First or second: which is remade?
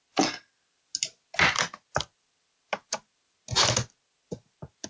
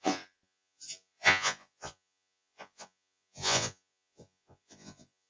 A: second